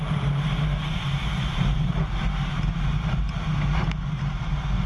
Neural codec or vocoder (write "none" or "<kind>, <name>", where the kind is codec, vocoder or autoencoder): vocoder, BigVGAN v2